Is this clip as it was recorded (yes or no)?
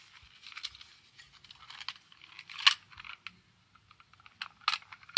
yes